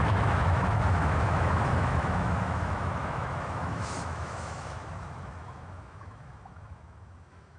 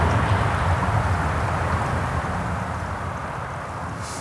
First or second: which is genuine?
second